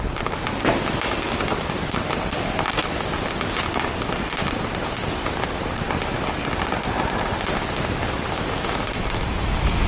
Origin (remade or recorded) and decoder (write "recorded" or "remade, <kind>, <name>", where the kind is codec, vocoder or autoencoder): recorded